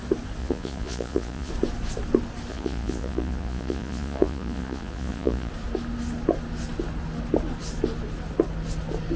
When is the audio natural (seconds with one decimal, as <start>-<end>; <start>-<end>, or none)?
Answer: 0.0-0.4; 1.5-2.5; 5.5-9.2